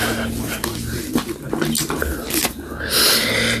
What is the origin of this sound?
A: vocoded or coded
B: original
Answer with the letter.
B